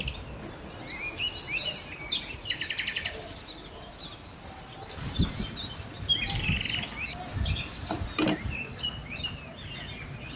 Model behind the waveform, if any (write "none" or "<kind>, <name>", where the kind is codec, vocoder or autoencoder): none